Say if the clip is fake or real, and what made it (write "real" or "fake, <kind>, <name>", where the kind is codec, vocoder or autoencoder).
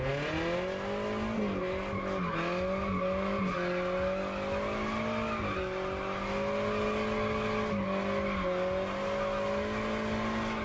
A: real